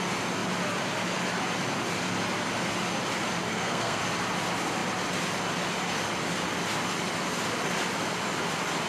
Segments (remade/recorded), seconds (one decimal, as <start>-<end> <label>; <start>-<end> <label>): 0.0-3.5 recorded; 3.5-4.0 remade; 4.0-8.9 recorded